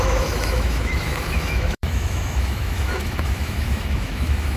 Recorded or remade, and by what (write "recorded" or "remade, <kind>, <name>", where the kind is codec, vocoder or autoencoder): remade, autoencoder, DAC-VAE